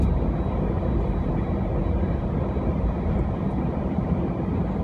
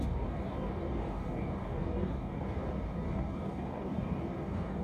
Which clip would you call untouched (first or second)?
first